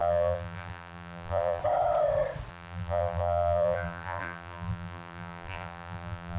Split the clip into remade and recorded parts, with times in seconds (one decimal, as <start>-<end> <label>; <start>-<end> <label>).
0.0-1.6 remade; 1.6-2.5 recorded; 2.5-6.4 remade

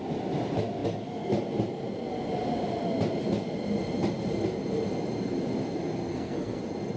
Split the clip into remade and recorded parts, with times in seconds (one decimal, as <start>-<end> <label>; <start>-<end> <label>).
0.0-6.1 recorded; 6.1-6.6 remade; 6.6-7.0 recorded

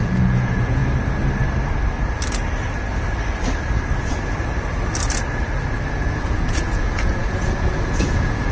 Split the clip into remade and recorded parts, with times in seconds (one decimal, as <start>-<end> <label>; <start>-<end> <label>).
0.0-0.8 remade; 0.8-5.9 recorded; 5.9-8.5 remade

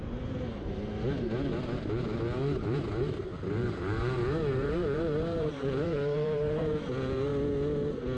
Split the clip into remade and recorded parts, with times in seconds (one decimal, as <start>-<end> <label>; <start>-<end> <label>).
0.0-0.8 remade; 0.8-1.5 recorded; 1.5-7.3 remade; 7.3-8.2 recorded

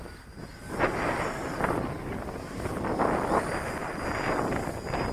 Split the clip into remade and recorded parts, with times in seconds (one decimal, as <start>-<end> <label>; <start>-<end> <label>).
0.0-5.1 recorded

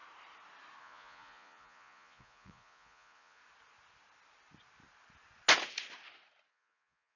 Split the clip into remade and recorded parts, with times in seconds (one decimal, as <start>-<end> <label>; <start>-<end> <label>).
0.0-0.8 recorded; 0.8-3.4 remade; 3.4-6.5 recorded; 6.5-7.2 remade

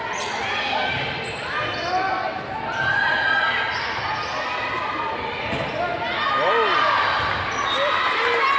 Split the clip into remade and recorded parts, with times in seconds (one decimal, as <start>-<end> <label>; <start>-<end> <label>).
0.0-8.6 recorded